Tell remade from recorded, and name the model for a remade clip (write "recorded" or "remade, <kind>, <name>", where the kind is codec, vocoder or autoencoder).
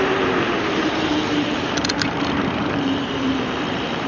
remade, vocoder, BigVGAN v2